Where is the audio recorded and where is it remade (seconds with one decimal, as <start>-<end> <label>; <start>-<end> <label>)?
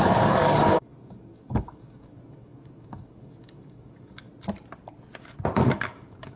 0.0-4.3 remade; 4.3-5.5 recorded; 5.5-6.4 remade